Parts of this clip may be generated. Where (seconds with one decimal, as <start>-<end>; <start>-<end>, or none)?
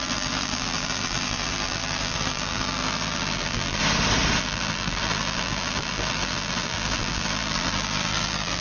0.0-3.8; 4.4-8.6